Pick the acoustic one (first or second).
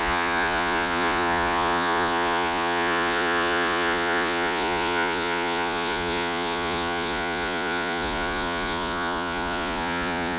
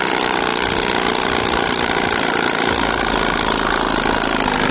second